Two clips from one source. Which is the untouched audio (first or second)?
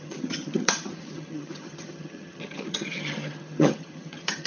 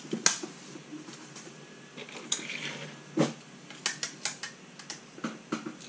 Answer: second